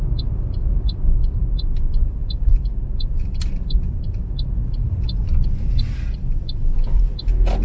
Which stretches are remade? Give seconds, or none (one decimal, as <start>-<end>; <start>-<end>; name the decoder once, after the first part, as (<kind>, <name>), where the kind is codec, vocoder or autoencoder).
none